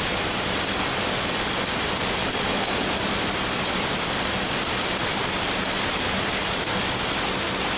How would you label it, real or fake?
real